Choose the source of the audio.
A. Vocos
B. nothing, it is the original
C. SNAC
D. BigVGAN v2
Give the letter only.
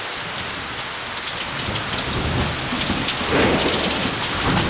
B